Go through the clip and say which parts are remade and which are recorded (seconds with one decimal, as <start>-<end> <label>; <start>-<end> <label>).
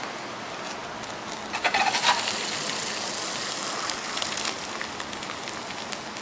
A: 0.0-6.2 recorded